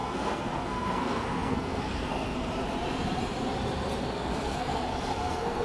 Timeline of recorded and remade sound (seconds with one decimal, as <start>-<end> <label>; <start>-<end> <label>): 0.0-2.5 remade; 2.5-4.0 recorded; 4.0-5.6 remade